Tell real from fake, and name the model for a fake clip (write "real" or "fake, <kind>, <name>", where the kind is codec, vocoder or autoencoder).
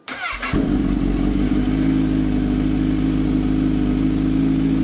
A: real